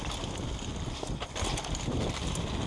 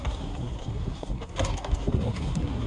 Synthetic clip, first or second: second